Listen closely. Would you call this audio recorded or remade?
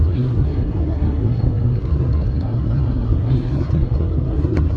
remade